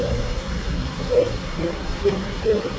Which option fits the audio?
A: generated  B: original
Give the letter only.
A